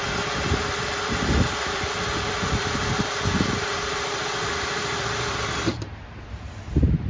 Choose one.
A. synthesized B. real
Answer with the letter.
A